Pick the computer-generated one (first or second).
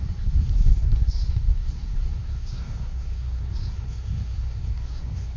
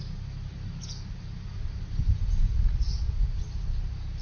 first